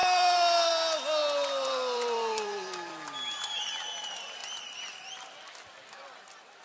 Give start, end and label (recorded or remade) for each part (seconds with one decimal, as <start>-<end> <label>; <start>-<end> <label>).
0.0-0.7 remade; 0.7-1.2 recorded; 1.2-2.9 remade; 2.9-4.4 recorded; 4.4-5.1 remade; 5.1-6.6 recorded